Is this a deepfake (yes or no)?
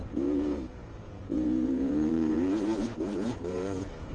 yes